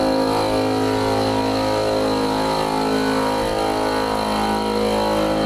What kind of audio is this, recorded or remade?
recorded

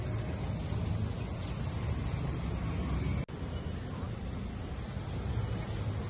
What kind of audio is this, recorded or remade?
recorded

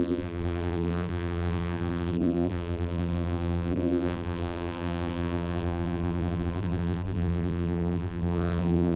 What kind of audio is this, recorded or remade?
remade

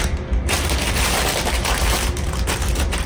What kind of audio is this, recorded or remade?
remade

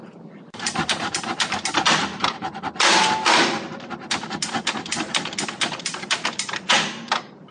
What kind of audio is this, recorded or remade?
remade